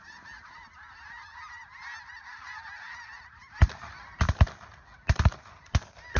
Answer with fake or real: real